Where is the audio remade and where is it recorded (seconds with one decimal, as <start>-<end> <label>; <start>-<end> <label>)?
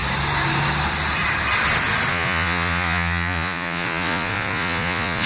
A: 0.0-2.1 recorded; 2.1-5.3 remade